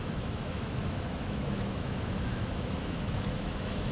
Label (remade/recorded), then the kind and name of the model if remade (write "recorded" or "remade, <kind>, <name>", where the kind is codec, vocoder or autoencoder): remade, autoencoder, DAC-VAE